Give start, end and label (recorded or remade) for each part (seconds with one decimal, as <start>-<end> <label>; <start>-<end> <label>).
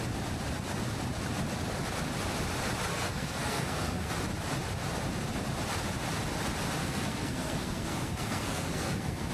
0.0-2.9 recorded; 2.9-4.1 remade; 4.1-6.8 recorded; 6.8-9.3 remade